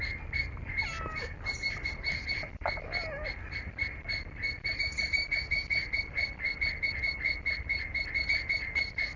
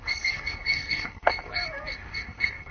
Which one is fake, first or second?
second